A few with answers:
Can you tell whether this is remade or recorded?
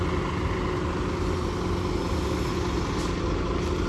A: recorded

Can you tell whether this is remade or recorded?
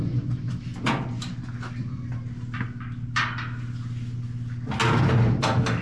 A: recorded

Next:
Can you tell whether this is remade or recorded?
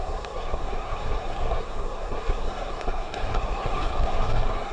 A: remade